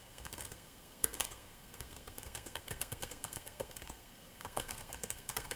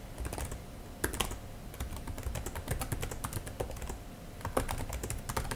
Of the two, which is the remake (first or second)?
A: first